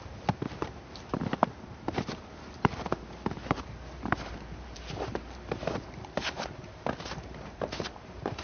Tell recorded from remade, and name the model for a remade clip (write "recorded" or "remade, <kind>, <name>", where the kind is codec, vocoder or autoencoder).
remade, vocoder, BigVGAN v2